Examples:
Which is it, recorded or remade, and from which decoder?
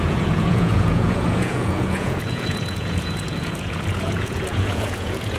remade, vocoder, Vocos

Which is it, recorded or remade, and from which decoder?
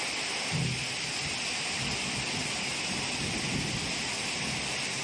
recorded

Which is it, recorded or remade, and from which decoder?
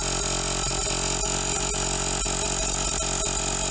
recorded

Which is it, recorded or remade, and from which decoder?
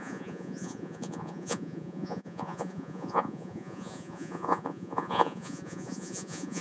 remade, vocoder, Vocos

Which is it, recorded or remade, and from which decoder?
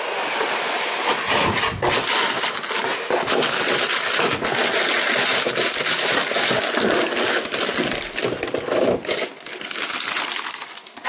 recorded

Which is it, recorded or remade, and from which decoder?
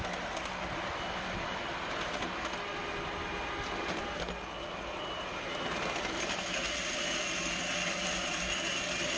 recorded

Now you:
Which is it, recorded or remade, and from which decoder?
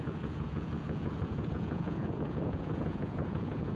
remade, vocoder, Vocos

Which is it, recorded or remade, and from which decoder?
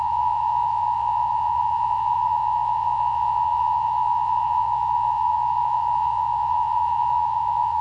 remade, vocoder, Vocos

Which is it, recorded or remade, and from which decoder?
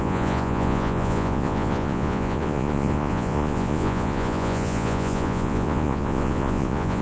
remade, vocoder, Vocos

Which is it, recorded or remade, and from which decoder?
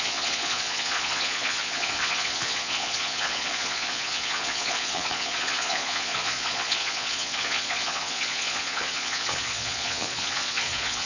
remade, vocoder, Vocos